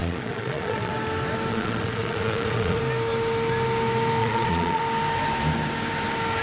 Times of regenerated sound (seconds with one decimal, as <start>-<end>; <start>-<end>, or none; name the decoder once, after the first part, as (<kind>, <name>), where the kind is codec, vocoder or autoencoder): 0.0-0.9 (vocoder, Vocos); 1.5-2.8; 4.2-4.8